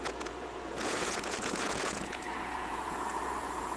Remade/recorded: remade